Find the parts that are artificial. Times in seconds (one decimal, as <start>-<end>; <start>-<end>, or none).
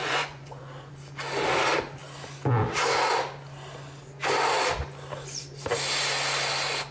0.0-0.9